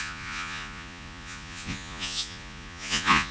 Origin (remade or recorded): remade